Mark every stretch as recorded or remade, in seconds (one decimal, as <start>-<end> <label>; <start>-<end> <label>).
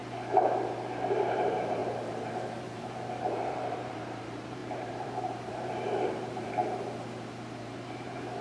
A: 0.0-1.1 recorded; 1.1-6.6 remade; 6.6-7.6 recorded; 7.6-8.4 remade